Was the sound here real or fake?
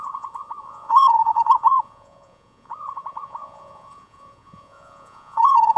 fake